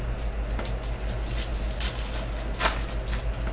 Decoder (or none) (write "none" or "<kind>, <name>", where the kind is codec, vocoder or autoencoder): none